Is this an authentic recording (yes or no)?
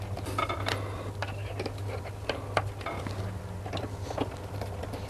yes